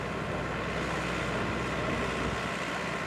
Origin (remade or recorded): recorded